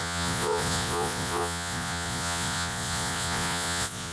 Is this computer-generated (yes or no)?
yes